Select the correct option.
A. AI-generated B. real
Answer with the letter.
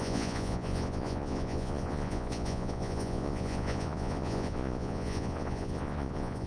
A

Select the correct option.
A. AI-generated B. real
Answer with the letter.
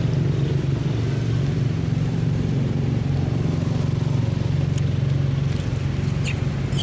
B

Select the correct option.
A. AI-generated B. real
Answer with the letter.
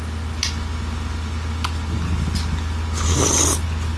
B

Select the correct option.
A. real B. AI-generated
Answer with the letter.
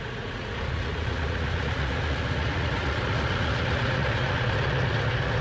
B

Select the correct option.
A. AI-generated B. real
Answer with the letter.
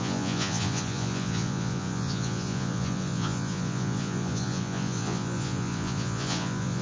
A